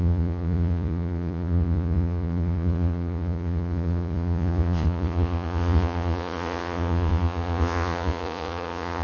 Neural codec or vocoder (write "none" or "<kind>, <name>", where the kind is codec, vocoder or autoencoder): vocoder, Vocos